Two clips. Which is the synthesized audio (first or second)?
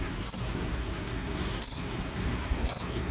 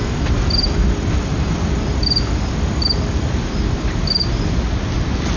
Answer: first